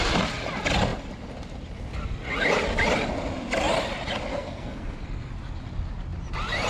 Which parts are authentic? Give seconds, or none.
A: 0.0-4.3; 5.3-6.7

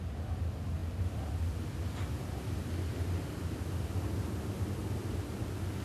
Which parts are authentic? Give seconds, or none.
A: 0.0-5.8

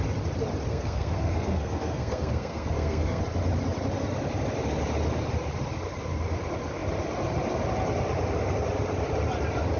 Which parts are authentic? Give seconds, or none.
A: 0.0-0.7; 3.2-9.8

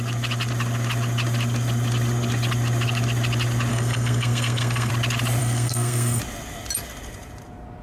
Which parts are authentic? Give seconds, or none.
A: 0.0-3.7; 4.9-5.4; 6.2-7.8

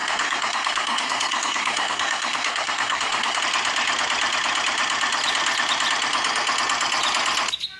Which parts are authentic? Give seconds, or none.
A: 3.4-7.8